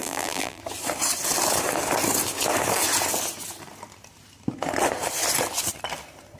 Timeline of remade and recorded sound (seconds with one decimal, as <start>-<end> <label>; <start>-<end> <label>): 0.0-0.6 remade; 0.6-6.4 recorded